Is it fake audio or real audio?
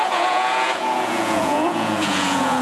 fake